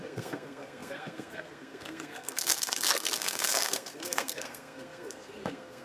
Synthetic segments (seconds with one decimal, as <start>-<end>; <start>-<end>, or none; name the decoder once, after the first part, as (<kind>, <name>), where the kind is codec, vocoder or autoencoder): 0.0-5.8 (codec, SNAC)